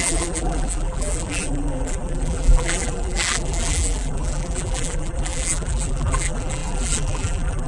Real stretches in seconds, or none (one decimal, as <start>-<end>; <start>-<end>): none